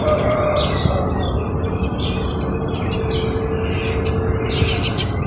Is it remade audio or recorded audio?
recorded